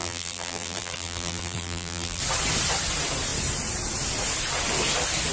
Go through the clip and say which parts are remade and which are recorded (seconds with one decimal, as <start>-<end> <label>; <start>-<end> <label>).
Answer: 0.0-2.2 remade; 2.2-5.3 recorded